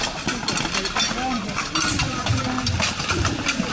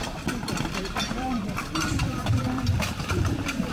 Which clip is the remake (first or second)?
second